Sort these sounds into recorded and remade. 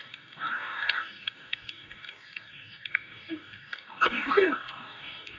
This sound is remade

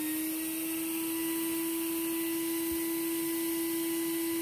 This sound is recorded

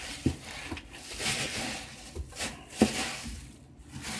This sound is recorded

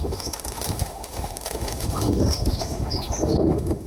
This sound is remade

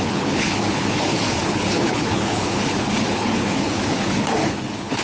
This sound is remade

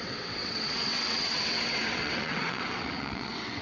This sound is remade